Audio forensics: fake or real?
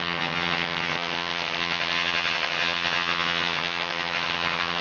fake